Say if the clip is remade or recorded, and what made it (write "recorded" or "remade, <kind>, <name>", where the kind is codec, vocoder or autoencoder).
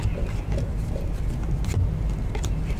recorded